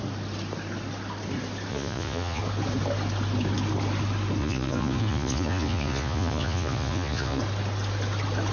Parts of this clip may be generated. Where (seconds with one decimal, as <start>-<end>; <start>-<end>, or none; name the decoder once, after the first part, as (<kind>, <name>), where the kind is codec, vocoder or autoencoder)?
1.7-2.4 (vocoder, Vocos); 4.4-7.4